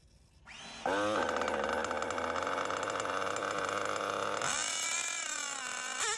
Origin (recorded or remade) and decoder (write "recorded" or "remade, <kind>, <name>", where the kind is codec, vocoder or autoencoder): recorded